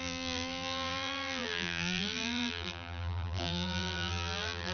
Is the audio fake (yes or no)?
yes